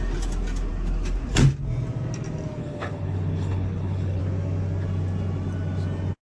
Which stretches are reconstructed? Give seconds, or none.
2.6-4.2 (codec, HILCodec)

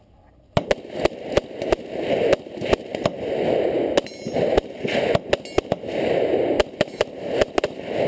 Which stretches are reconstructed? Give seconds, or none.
none

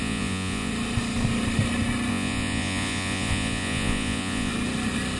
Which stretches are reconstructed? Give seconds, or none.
0.0-0.7 (vocoder, Vocos); 2.1-4.5

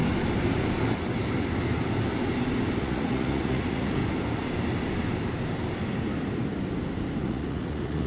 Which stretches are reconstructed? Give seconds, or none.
2.8-4.0 (vocoder, Vocos); 7.2-8.1